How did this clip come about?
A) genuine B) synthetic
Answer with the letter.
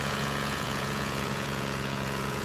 B